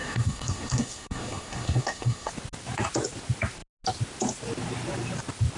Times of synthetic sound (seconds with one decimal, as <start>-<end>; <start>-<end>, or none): 0.0-2.3